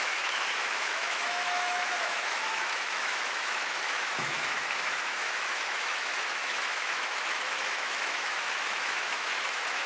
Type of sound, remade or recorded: remade